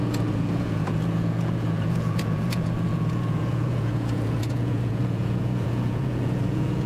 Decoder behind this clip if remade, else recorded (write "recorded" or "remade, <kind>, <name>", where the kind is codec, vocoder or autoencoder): remade, vocoder, Vocos